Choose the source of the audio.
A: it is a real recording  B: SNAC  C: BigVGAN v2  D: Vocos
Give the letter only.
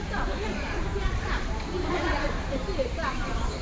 C